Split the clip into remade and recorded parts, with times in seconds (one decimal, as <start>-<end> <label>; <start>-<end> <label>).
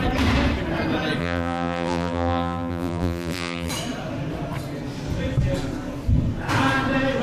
0.0-1.2 recorded; 1.2-3.7 remade; 3.7-7.2 recorded